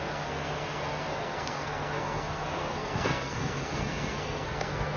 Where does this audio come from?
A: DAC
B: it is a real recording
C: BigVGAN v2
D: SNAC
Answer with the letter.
D